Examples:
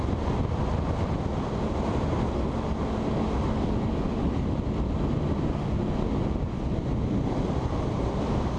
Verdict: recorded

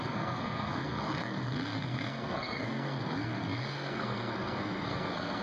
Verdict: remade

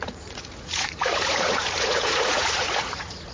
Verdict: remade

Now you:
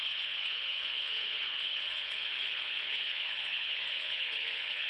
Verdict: remade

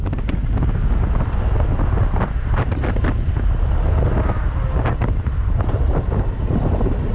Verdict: recorded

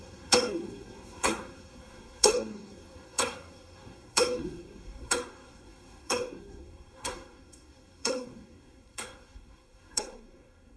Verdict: remade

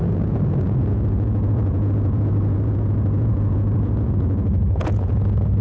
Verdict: remade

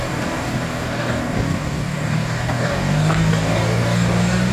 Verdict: remade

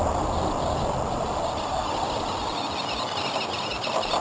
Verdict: recorded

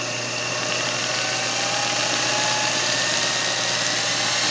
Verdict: recorded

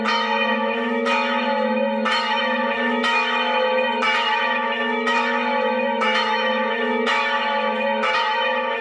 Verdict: remade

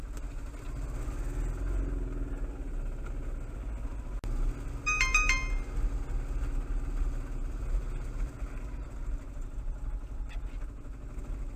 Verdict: recorded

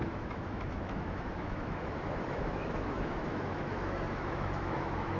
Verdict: remade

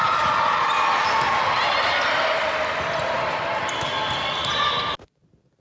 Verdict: recorded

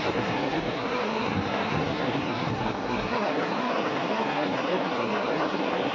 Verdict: remade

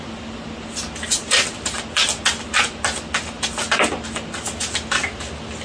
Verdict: recorded